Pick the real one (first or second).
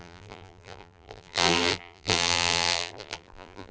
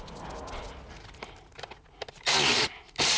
second